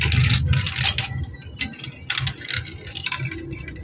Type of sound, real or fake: real